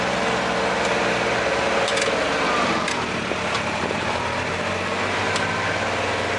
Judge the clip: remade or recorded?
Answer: recorded